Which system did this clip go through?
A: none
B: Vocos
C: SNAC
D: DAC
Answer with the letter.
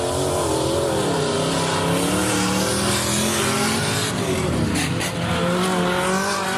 A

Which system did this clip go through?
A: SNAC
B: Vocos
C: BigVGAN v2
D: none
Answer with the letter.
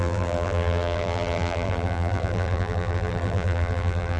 C